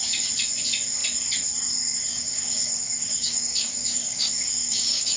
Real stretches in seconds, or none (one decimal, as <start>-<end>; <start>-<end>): 0.0-2.1